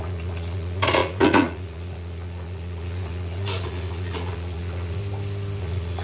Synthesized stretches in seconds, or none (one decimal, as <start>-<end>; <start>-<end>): 0.0-5.0; 5.6-6.0